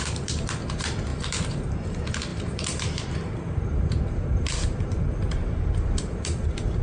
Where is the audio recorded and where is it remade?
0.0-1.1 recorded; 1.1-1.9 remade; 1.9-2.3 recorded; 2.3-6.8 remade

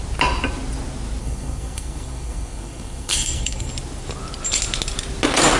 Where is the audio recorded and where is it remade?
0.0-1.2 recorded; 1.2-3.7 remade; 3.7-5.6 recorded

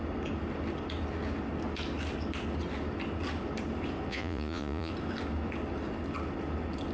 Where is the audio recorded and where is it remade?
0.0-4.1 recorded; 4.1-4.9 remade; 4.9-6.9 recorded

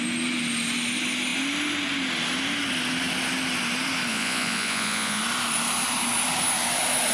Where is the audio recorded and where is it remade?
0.0-4.1 recorded; 4.1-5.2 remade; 5.2-7.1 recorded

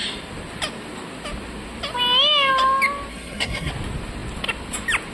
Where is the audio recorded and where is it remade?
0.0-3.1 recorded; 3.1-3.7 remade; 3.7-5.1 recorded

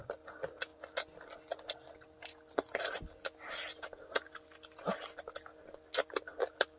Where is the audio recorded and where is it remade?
0.0-6.8 recorded

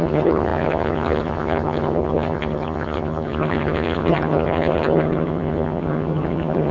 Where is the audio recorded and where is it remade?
0.0-6.7 remade

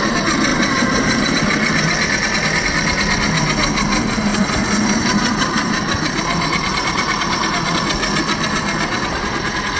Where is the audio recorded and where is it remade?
0.0-0.5 recorded; 0.5-1.3 remade; 1.3-4.3 recorded; 4.3-7.7 remade; 7.7-9.8 recorded